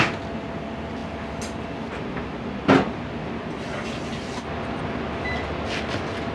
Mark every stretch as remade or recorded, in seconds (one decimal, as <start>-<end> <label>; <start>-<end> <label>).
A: 0.0-6.3 recorded